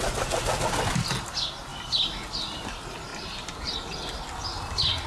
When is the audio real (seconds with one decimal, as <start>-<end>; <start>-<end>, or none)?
0.0-1.7; 2.7-3.1; 4.2-5.1